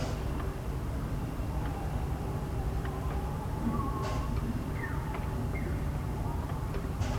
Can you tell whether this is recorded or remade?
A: remade